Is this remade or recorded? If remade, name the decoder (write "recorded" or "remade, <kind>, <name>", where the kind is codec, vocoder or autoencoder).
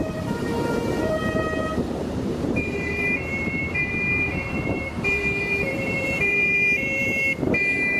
remade, vocoder, BigVGAN v2